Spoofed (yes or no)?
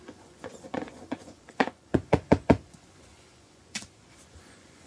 yes